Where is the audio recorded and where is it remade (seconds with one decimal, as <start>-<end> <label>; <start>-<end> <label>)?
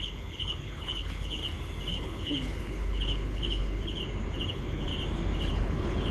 0.0-1.4 remade; 1.4-1.9 recorded; 1.9-4.0 remade; 4.0-4.5 recorded; 4.5-4.9 remade; 4.9-5.5 recorded; 5.5-6.1 remade